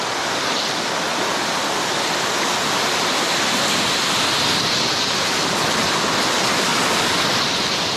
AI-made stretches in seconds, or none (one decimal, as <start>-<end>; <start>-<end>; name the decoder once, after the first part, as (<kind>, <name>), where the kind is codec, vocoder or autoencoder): none